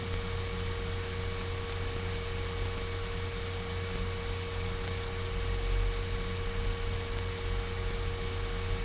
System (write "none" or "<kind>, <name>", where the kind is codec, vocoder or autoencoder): none